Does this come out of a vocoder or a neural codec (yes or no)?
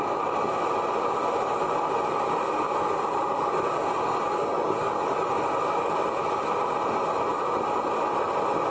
no